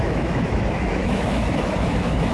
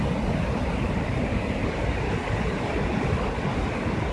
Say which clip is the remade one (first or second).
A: first